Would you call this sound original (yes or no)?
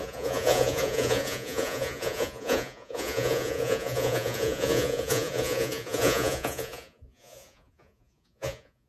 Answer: no